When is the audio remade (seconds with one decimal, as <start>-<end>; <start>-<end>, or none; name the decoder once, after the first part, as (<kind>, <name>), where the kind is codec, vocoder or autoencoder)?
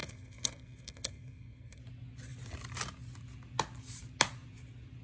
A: 0.0-1.8 (codec, SNAC)